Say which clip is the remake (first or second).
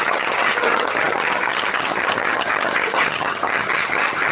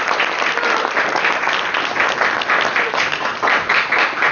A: first